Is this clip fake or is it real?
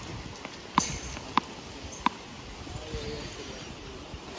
real